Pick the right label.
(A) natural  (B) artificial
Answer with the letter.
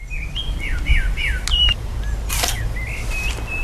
A